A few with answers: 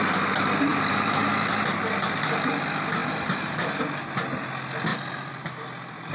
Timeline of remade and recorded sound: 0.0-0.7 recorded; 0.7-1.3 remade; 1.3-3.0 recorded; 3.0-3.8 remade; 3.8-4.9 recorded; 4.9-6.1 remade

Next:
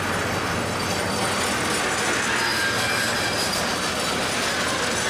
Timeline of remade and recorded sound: 0.0-5.1 recorded

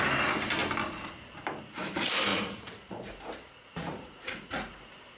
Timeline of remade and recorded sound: 0.0-2.3 recorded; 2.3-4.7 remade; 4.7-5.2 recorded

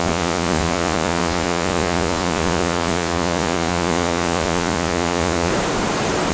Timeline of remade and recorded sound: 0.0-5.5 remade; 5.5-6.3 recorded